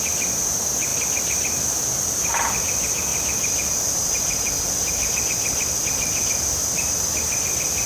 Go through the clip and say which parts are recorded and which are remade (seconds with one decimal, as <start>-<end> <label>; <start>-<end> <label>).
0.0-0.9 recorded; 0.9-2.3 remade; 2.3-3.1 recorded; 3.1-7.9 remade